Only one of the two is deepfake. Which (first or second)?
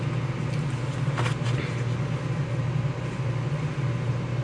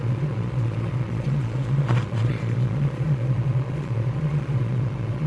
second